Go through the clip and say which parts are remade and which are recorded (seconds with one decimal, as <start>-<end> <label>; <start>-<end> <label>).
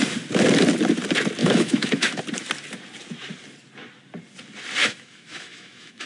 0.0-1.4 recorded; 1.4-2.2 remade; 2.2-4.8 recorded; 4.8-6.1 remade